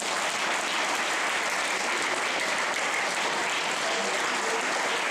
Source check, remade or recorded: recorded